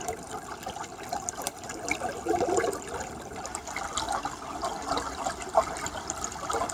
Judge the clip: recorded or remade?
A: recorded